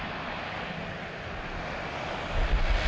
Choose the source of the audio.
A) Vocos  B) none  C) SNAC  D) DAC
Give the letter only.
B